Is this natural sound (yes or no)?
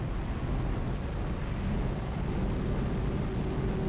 yes